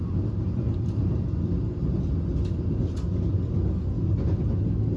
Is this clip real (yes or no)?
yes